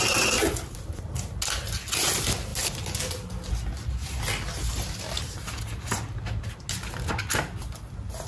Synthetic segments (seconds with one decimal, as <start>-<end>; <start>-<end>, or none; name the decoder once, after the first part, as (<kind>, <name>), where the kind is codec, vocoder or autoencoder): none